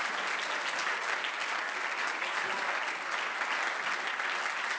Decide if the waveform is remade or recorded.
recorded